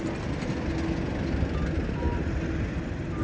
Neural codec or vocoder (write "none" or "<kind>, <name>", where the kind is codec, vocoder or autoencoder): none